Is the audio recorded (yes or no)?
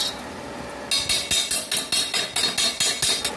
yes